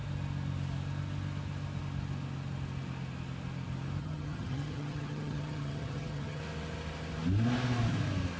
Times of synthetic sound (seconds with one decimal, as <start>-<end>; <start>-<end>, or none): 4.0-6.4